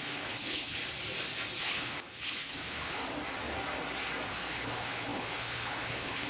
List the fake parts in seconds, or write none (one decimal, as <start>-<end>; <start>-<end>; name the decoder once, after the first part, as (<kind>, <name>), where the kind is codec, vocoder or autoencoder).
0.0-0.8 (codec, HILCodec); 1.6-3.0; 4.3-6.3